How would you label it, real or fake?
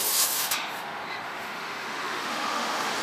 fake